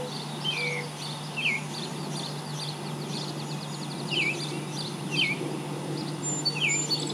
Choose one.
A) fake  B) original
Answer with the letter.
B